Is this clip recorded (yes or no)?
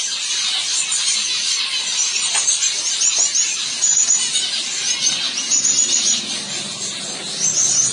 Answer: yes